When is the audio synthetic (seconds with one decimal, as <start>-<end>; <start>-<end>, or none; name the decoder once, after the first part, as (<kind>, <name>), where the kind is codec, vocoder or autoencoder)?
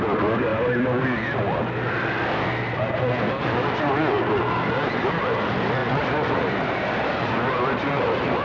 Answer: none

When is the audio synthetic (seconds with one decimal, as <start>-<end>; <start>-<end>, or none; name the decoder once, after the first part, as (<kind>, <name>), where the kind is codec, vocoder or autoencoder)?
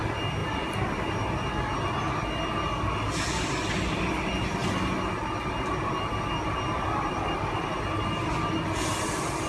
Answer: none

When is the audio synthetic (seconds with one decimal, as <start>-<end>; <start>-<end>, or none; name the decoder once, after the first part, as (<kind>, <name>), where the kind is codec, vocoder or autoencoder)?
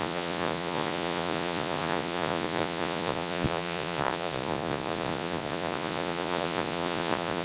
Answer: 0.0-7.4 (vocoder, Vocos)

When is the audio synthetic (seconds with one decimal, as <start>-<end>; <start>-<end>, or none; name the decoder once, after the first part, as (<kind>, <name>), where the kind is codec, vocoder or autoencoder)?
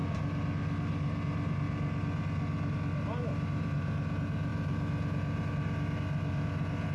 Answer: none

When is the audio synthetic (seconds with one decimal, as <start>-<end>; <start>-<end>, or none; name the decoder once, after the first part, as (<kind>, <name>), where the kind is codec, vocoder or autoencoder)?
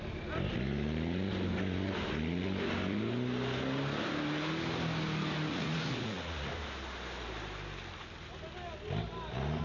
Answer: 5.5-6.5 (vocoder, Vocos)